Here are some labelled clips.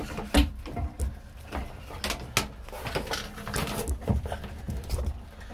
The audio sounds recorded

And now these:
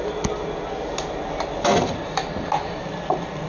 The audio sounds recorded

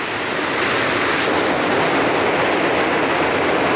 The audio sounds recorded